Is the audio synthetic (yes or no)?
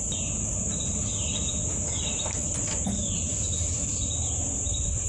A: no